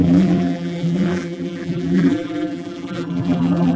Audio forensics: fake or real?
fake